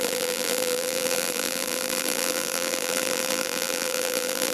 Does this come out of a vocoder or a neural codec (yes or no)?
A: yes